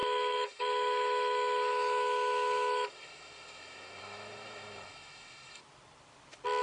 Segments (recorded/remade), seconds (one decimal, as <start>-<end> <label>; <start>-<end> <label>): 0.0-5.6 remade; 5.6-6.6 recorded